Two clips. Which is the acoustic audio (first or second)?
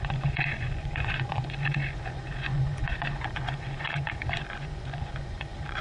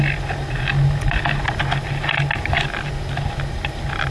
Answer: second